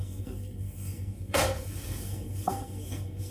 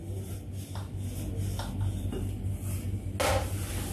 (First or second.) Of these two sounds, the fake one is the first